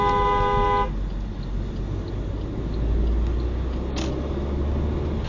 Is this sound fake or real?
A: real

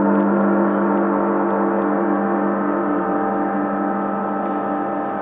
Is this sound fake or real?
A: real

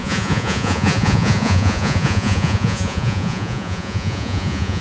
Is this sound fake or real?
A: fake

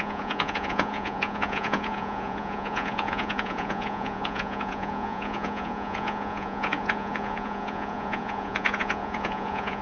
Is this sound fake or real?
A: fake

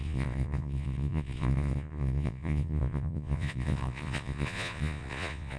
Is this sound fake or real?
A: fake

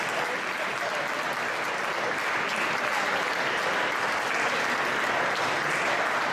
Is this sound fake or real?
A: real